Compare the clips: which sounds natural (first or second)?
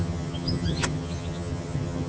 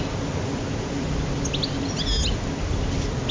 second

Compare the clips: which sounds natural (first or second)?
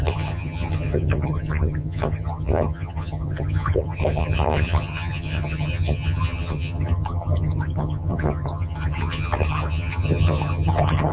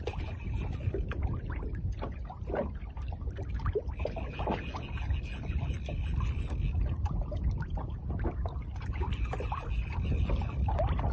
second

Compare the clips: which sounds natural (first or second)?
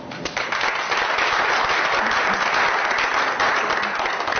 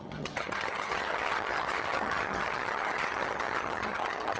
first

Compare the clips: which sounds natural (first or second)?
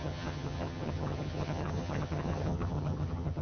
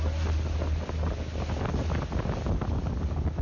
second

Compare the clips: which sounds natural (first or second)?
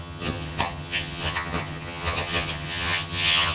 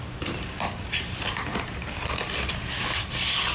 second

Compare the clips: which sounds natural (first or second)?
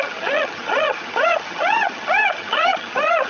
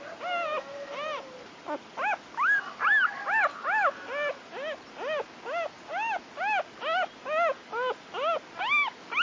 second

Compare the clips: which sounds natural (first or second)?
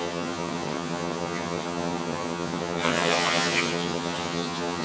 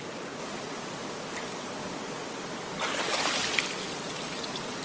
second